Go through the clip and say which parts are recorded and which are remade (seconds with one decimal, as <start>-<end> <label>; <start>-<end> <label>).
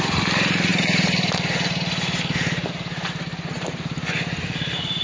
0.0-5.0 recorded